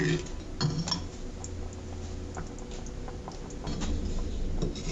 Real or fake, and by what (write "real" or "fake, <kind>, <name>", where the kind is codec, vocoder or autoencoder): real